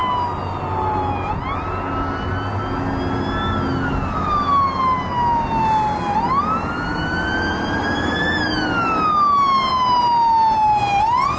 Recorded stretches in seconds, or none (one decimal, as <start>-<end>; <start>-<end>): 0.0-11.4

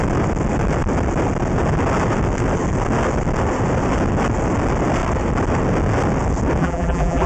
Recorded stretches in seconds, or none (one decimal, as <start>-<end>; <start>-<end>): 0.0-6.6

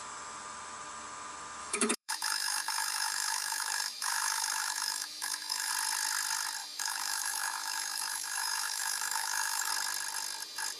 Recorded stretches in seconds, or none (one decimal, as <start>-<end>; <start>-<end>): 0.0-1.6; 5.7-6.6; 9.7-10.8

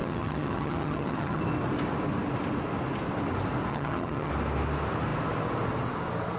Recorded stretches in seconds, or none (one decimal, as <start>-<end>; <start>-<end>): 1.4-3.7; 4.3-6.4

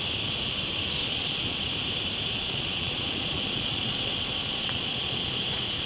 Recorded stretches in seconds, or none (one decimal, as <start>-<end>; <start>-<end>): 0.0-1.0; 1.7-2.3

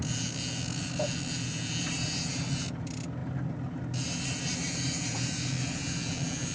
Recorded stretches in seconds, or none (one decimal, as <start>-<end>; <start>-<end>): 0.0-6.5

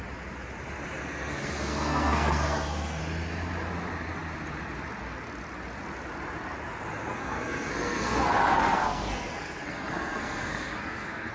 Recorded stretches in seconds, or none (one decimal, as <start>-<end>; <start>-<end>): 0.0-1.0; 3.0-7.1